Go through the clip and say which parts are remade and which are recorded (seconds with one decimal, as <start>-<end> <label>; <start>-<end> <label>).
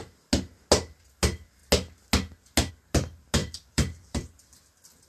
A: 0.0-3.4 recorded; 3.4-4.3 remade; 4.3-5.1 recorded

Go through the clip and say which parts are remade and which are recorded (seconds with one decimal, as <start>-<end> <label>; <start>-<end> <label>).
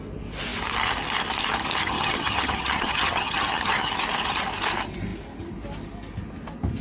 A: 0.0-1.8 recorded; 1.8-3.9 remade; 3.9-6.8 recorded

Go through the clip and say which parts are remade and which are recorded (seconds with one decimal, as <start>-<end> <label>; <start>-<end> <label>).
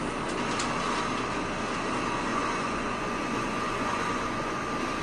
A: 0.0-2.3 recorded; 2.3-4.6 remade; 4.6-5.0 recorded